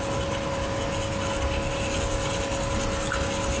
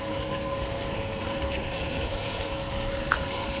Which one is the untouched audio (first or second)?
first